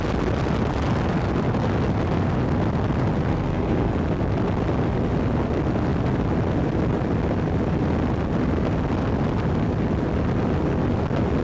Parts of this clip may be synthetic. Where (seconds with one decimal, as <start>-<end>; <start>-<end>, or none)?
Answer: 3.3-3.9